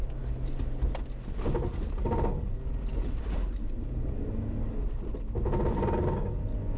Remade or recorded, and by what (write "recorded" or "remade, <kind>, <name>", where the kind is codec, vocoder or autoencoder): recorded